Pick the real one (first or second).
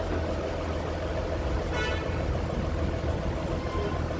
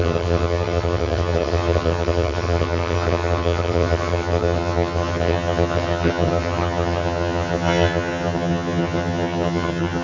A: first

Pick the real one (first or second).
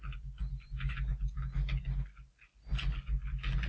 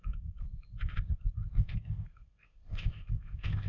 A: first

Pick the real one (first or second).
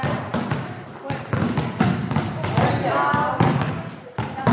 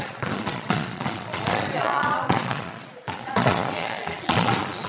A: first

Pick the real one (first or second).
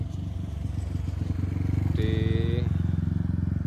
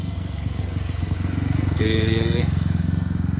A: first